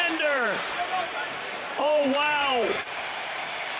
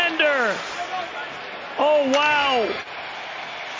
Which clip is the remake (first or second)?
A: first